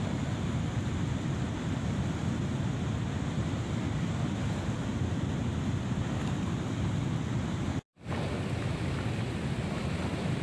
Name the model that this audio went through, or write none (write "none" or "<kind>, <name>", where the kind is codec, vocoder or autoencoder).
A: none